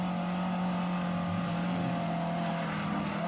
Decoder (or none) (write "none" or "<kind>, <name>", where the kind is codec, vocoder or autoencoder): none